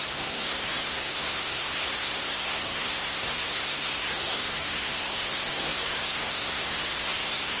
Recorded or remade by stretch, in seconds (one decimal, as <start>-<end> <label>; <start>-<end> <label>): 0.0-7.6 remade